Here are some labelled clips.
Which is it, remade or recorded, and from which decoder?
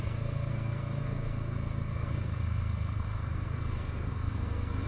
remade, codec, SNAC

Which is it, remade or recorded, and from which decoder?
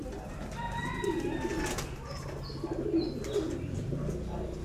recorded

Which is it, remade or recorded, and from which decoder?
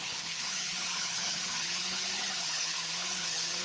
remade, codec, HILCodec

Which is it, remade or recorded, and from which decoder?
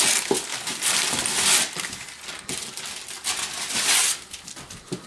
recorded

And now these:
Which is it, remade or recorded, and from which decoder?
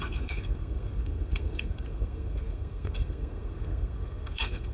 remade, codec, SNAC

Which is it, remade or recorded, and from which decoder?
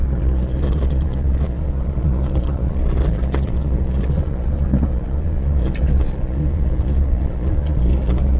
remade, vocoder, Vocos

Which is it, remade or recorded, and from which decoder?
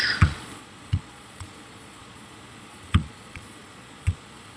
remade, vocoder, Vocos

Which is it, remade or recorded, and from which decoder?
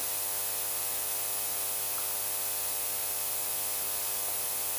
recorded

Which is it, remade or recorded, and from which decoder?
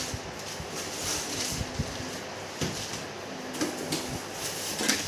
recorded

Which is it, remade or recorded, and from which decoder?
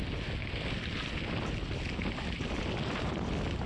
recorded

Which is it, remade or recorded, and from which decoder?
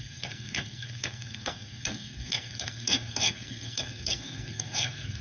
remade, codec, SNAC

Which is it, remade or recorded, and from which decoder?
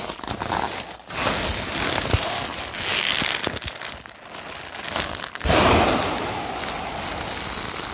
recorded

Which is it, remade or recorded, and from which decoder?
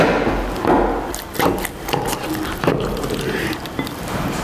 recorded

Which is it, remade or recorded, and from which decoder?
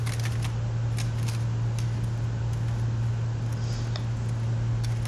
recorded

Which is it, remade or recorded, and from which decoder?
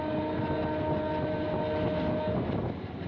recorded